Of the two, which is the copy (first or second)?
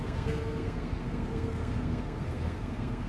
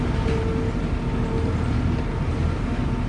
first